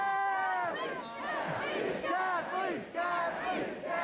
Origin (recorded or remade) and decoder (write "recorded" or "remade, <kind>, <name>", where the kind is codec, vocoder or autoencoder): recorded